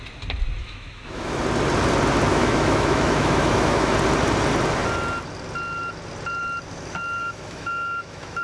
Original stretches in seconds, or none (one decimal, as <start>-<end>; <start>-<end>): 0.0-0.6; 1.4-2.3; 3.9-7.2